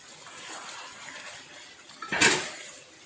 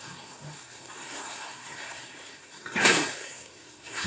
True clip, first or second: first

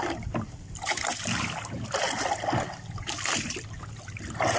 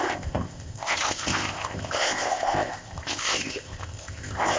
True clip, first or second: first